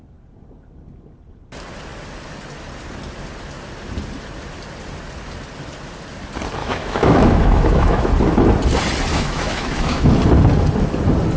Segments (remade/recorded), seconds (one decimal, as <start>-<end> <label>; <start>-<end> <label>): 0.0-6.6 recorded; 6.6-8.1 remade; 8.1-9.1 recorded; 9.1-10.1 remade; 10.1-11.4 recorded